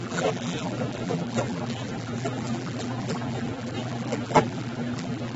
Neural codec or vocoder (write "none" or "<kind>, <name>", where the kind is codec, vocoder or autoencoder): vocoder, BigVGAN v2